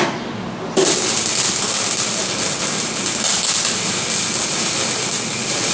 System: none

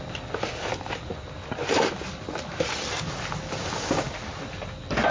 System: none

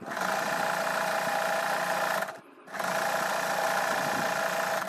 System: none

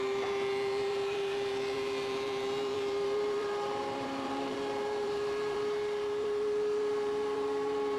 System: vocoder, BigVGAN v2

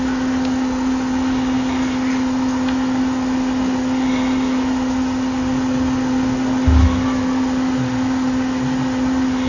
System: none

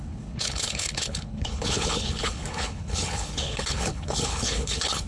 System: codec, HILCodec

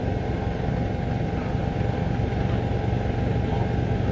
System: none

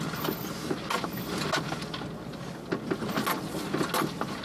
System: none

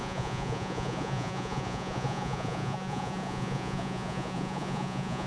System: vocoder, Vocos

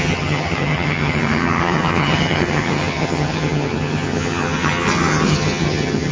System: vocoder, HiFi-GAN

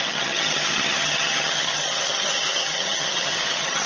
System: vocoder, HiFi-GAN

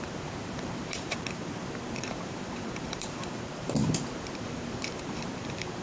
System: vocoder, BigVGAN v2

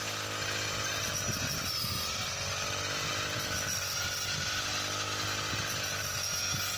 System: none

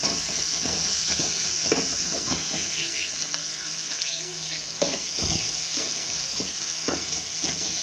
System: codec, SNAC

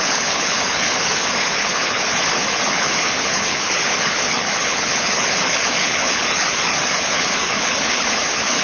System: codec, HILCodec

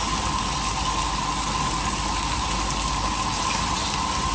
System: none